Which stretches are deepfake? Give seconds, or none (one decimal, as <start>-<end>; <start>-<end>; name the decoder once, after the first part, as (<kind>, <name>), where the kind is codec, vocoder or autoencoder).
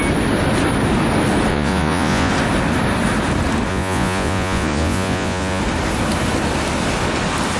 1.5-2.3 (vocoder, Vocos); 3.7-5.6